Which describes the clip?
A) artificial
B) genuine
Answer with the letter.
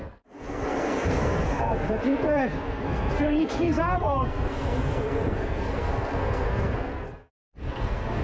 A